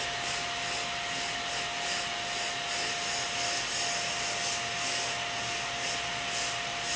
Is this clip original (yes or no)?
yes